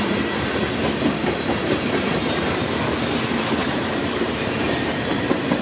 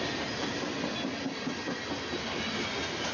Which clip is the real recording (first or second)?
second